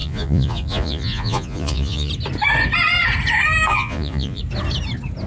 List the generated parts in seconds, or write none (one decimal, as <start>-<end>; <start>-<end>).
0.0-2.1; 3.7-4.4